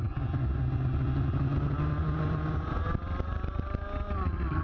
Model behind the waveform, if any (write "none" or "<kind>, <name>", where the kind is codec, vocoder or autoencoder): none